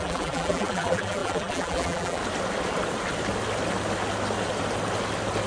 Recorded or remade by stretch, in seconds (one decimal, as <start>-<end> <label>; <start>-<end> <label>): 0.0-2.2 remade; 2.2-5.5 recorded